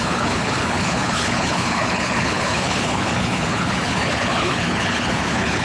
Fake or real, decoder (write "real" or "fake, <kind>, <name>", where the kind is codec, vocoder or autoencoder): fake, codec, HILCodec